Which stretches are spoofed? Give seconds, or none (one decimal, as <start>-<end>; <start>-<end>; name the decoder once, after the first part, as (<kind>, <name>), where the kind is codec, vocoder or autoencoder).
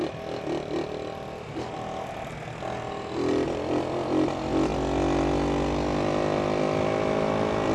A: none